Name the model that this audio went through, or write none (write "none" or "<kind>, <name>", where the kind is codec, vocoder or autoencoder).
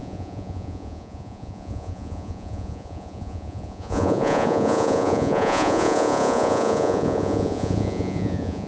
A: vocoder, Vocos